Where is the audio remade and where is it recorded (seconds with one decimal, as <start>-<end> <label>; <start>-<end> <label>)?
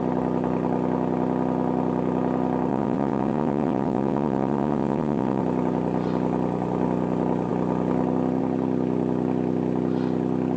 0.0-2.7 recorded; 2.7-5.4 remade; 5.4-10.6 recorded